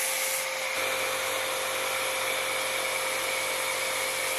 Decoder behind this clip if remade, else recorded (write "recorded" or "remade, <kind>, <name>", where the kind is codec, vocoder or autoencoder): recorded